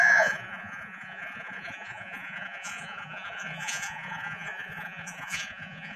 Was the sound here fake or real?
fake